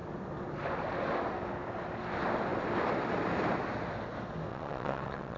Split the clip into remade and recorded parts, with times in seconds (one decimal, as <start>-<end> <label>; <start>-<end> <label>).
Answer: 0.0-4.5 recorded; 4.5-5.4 remade

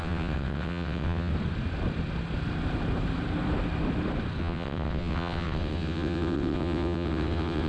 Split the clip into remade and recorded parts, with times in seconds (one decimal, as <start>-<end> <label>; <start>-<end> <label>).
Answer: 0.0-1.3 remade; 1.3-4.4 recorded; 4.4-7.7 remade

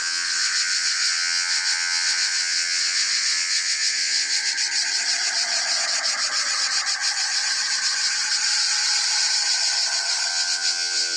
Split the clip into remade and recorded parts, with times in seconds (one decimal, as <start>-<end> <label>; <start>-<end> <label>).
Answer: 0.0-4.5 remade; 4.5-10.3 recorded; 10.3-11.2 remade

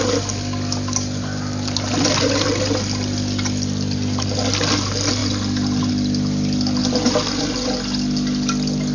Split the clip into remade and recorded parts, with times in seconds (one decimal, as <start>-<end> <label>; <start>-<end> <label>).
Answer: 0.0-8.9 recorded

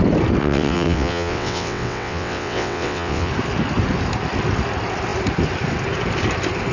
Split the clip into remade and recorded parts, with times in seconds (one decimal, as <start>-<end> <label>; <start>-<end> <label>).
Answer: 0.0-0.4 recorded; 0.4-3.3 remade; 3.3-6.7 recorded

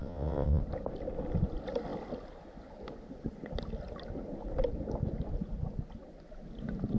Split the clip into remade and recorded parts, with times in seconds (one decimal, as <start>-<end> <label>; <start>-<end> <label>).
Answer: 0.0-0.6 remade; 0.6-7.0 recorded

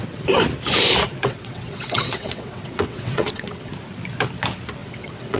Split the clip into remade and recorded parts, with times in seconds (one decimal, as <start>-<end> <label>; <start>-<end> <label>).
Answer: 0.0-1.2 recorded; 1.2-3.7 remade; 3.7-4.8 recorded; 4.8-5.4 remade